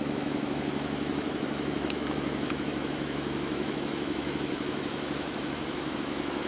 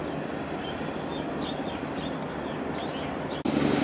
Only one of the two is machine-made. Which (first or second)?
first